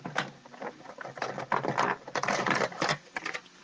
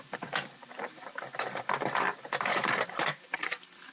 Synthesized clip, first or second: second